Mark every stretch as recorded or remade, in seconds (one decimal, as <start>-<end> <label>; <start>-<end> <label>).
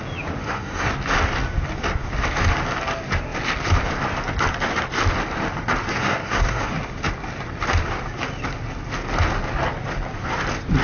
0.0-0.4 recorded; 0.4-0.9 remade; 0.9-5.9 recorded; 5.9-6.7 remade; 6.7-10.8 recorded